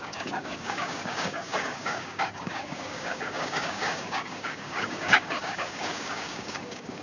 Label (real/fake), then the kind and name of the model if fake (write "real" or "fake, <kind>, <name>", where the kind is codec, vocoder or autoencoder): fake, codec, DAC